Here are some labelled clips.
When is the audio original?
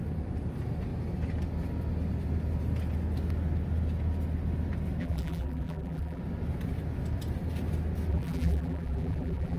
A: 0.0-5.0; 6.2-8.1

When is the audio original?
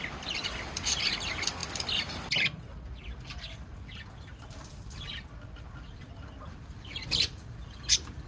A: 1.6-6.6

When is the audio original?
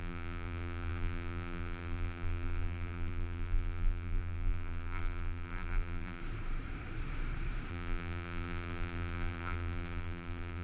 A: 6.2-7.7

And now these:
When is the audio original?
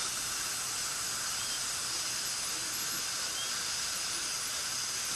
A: 0.0-5.2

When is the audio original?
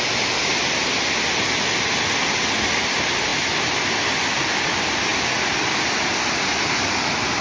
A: 0.0-7.4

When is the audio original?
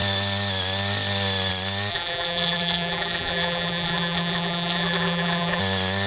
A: 0.0-1.9; 5.6-6.1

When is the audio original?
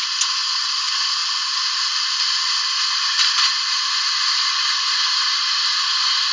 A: 0.0-1.2; 2.5-6.3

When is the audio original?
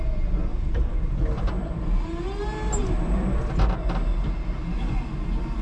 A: 0.0-0.5; 1.7-2.8; 3.4-5.6